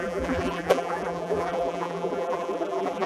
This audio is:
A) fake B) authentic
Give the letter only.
A